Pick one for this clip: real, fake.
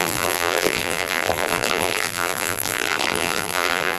fake